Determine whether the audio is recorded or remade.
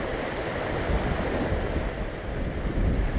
recorded